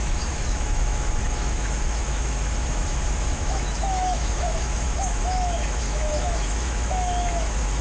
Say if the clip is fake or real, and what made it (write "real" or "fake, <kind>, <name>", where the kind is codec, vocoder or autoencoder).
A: fake, autoencoder, DAC-VAE